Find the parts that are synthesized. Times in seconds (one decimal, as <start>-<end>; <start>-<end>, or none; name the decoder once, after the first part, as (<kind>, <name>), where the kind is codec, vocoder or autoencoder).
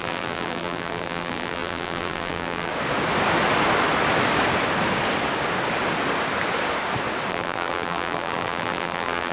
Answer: 0.0-2.7 (vocoder, BigVGAN v2); 7.3-9.3